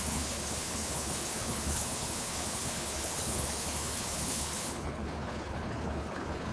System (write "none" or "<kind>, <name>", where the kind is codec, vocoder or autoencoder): codec, HILCodec